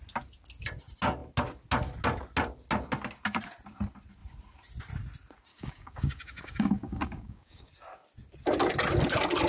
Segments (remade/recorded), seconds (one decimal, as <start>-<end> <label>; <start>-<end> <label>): 0.0-5.5 recorded; 5.5-7.7 remade; 7.7-9.5 recorded